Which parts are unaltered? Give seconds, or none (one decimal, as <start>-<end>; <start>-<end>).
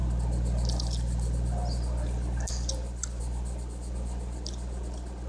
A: 0.0-5.3